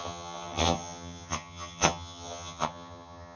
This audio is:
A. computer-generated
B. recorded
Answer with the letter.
A